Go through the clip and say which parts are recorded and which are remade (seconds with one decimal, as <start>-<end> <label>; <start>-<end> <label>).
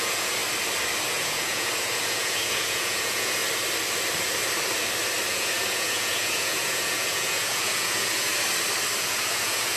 0.0-0.4 remade; 0.4-1.1 recorded; 1.1-3.4 remade; 3.4-5.3 recorded; 5.3-8.3 remade; 8.3-9.0 recorded; 9.0-9.8 remade